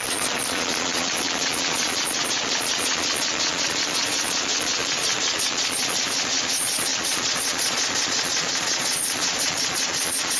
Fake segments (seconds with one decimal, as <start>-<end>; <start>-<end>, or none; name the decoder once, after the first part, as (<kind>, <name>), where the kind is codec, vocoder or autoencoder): 0.0-10.4 (vocoder, Vocos)